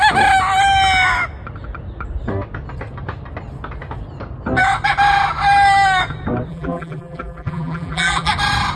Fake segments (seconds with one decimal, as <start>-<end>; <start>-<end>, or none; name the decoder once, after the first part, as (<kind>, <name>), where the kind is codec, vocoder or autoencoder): 6.5-8.3 (vocoder, BigVGAN v2)